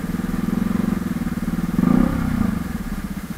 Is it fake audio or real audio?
real